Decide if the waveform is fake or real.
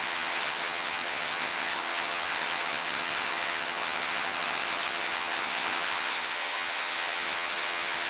fake